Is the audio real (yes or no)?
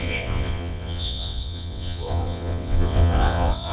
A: no